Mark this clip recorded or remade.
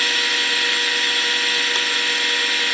recorded